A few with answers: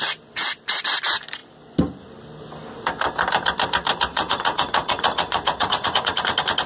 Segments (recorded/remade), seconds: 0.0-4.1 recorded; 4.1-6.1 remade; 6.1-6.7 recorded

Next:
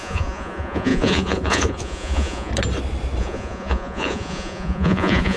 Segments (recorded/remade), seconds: 0.0-2.5 remade; 2.5-3.2 recorded; 3.2-5.4 remade

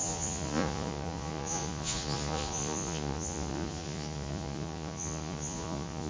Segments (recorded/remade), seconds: 0.0-6.1 remade

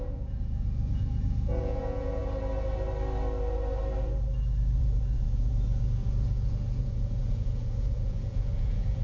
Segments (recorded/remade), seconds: 0.0-2.2 remade; 2.2-4.8 recorded; 4.8-9.0 remade

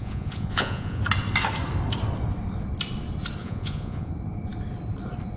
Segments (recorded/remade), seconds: 0.0-1.0 remade; 1.0-3.4 recorded; 3.4-4.1 remade; 4.1-5.4 recorded